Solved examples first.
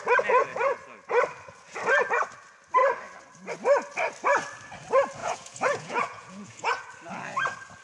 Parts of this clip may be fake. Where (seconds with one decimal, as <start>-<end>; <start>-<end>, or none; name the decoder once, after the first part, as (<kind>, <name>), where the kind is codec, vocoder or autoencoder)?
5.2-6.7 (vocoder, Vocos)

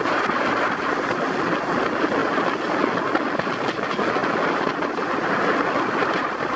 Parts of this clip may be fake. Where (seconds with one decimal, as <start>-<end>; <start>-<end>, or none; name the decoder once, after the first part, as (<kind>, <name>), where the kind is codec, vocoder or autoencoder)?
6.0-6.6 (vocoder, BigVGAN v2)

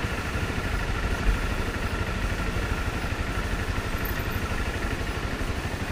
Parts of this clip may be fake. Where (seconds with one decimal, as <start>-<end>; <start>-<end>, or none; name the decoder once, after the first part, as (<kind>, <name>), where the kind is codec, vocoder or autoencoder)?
0.0-2.2 (vocoder, BigVGAN v2)

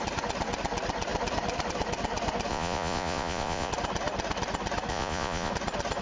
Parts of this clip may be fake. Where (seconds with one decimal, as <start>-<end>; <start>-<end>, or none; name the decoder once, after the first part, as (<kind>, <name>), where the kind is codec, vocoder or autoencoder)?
2.5-3.7 (vocoder, Vocos); 4.9-5.5